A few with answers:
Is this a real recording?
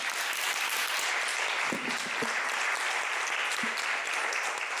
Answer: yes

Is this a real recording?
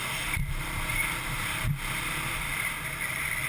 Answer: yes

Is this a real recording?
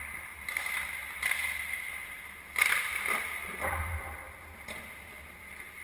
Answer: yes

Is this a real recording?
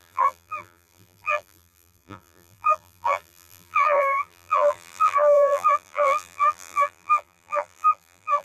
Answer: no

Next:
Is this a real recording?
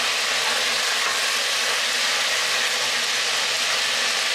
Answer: yes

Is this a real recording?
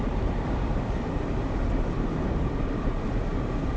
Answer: no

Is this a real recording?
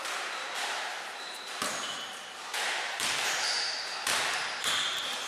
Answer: no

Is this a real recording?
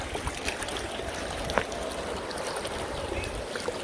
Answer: no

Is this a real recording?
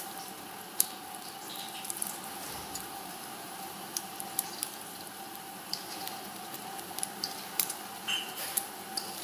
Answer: no